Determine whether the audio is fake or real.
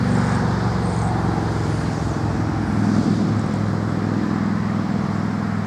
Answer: real